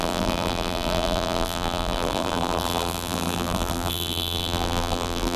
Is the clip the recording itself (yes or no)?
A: no